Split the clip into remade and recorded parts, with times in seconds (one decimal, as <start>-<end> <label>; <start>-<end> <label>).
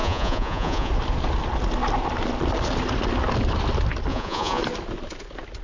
0.0-0.9 remade; 0.9-4.1 recorded; 4.1-4.6 remade; 4.6-5.6 recorded